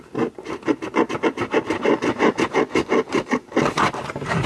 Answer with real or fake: fake